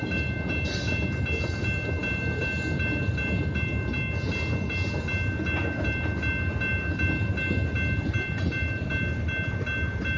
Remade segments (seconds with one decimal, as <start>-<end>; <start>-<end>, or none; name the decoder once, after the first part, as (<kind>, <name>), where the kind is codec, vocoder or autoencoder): none